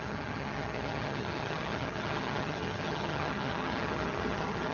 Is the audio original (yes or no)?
no